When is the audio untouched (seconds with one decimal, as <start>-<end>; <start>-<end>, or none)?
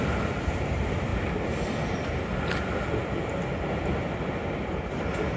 0.0-5.4